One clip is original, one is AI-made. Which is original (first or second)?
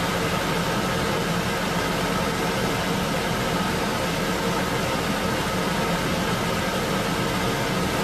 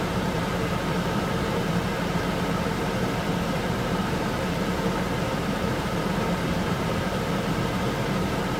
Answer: first